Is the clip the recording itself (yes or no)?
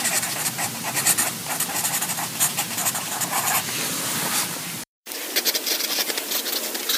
no